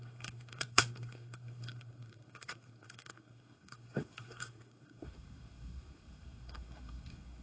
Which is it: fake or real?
fake